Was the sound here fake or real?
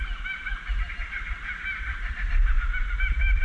real